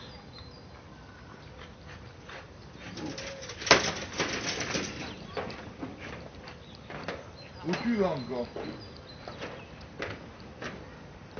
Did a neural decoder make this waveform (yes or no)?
no